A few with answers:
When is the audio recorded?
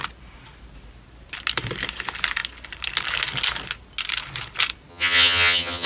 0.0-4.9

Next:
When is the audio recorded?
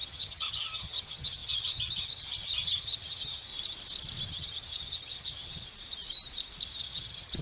3.5-4.3; 5.6-6.8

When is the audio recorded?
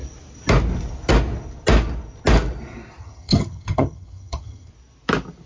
0.0-3.0; 4.7-5.5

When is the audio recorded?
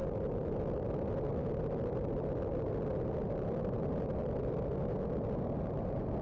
0.0-6.2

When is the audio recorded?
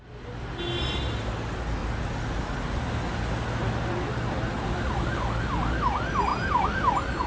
0.0-7.3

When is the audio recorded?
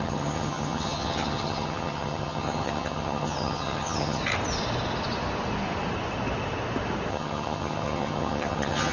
4.2-7.1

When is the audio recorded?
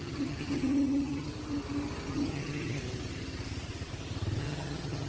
1.3-2.1; 2.8-4.4